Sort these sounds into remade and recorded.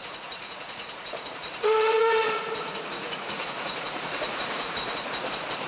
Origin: remade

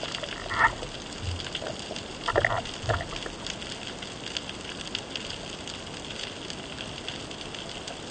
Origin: recorded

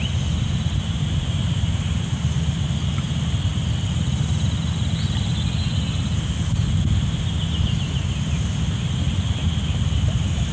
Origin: recorded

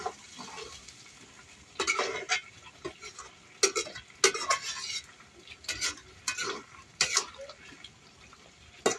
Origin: recorded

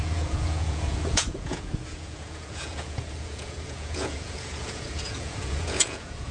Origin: remade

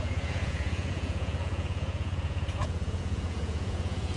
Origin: remade